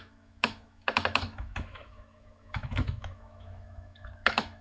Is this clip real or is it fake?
fake